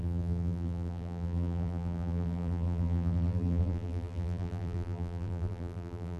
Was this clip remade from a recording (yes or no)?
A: yes